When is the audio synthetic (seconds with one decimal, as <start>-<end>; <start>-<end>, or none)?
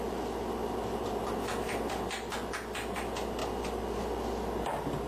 3.4-4.0